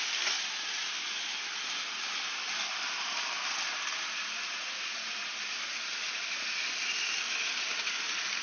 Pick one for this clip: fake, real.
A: real